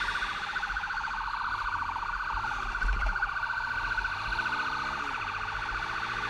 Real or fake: real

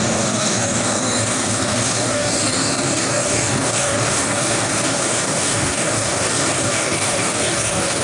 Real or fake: fake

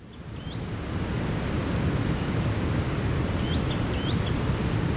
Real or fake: real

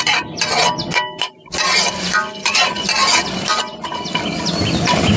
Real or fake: real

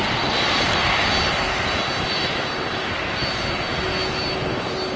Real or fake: real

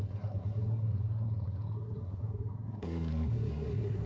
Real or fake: fake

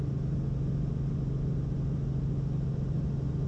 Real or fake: real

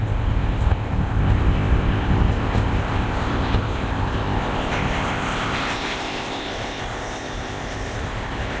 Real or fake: fake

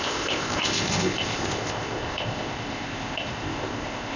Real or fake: fake